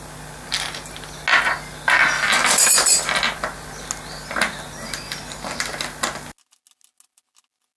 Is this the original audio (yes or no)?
yes